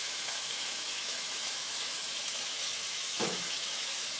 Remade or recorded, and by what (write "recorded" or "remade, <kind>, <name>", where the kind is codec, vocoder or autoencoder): remade, autoencoder, DAC-VAE